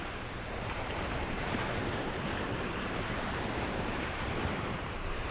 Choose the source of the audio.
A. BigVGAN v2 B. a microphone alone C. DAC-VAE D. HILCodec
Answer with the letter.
A